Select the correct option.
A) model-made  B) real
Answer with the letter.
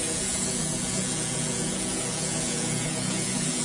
A